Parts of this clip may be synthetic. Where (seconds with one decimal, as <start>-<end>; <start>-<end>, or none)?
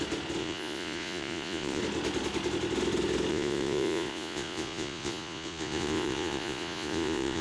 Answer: 0.4-1.8; 3.3-7.4